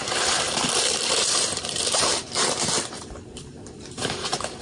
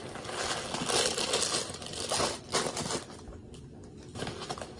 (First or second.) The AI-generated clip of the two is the first